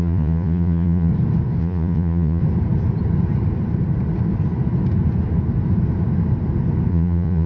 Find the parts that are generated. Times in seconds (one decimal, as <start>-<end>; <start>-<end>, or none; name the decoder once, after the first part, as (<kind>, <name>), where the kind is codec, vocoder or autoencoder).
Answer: 0.0-1.1 (vocoder, Vocos); 1.6-2.4; 6.9-7.5